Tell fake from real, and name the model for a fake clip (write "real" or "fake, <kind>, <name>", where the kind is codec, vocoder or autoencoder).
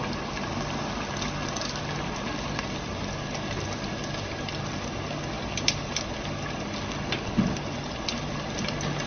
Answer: real